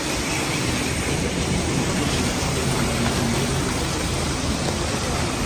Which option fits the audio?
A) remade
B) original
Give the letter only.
B